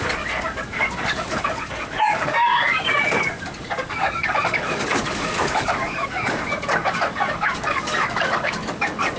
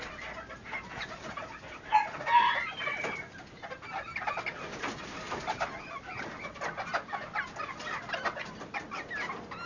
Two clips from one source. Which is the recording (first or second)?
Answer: second